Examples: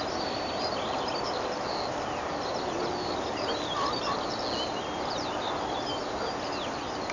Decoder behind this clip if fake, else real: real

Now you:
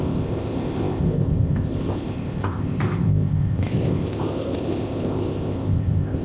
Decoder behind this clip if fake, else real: fake, codec, ZipCodec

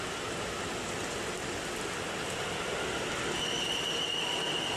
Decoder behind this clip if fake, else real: real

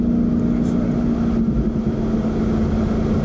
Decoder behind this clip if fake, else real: real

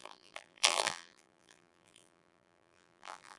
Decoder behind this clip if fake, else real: fake, vocoder, BigVGAN v2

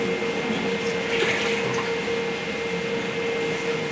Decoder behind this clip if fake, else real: real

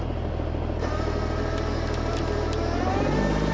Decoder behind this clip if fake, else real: real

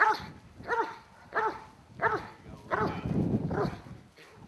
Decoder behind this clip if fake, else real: real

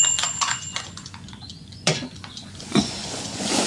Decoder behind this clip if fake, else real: fake, vocoder, Vocos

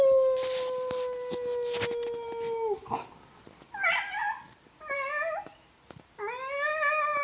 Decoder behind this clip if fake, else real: real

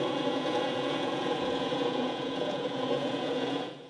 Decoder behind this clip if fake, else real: fake, vocoder, Vocos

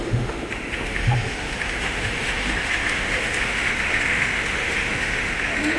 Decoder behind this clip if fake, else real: fake, autoencoder, DAC-VAE